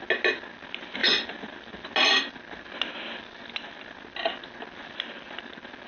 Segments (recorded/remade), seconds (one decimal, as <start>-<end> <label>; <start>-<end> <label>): 0.0-5.9 recorded